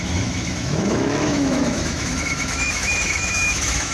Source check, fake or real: fake